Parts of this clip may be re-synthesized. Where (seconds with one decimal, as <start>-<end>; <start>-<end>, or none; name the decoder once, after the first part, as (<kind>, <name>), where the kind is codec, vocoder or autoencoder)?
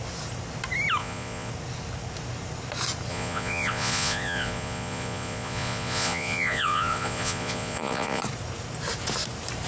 1.0-1.5 (vocoder, Vocos); 3.1-8.2